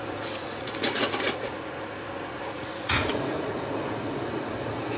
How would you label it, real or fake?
fake